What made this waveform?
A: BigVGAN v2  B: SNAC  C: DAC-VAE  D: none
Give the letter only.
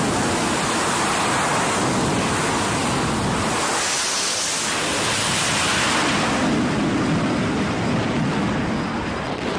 D